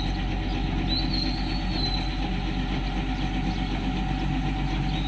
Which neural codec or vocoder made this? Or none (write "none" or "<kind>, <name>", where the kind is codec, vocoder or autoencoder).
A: none